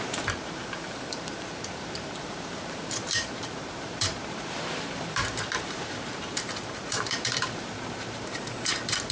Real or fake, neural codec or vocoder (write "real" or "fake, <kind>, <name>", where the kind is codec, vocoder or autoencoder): fake, vocoder, BigVGAN v2